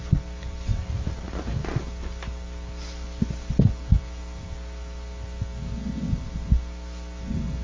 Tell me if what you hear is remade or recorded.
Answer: recorded